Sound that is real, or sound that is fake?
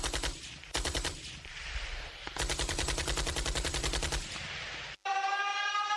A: fake